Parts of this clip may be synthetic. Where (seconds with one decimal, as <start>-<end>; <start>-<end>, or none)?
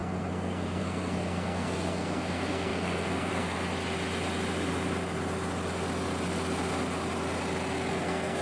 0.0-3.7; 7.9-8.4